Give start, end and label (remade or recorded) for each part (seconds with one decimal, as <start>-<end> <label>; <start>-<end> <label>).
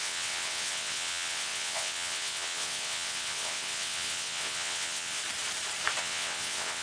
0.0-5.2 remade; 5.2-6.0 recorded; 6.0-6.8 remade